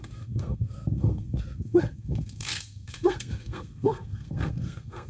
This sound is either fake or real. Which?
fake